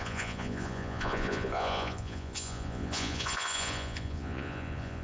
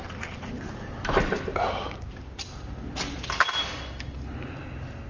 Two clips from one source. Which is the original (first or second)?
second